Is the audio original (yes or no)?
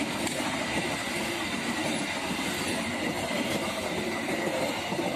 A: yes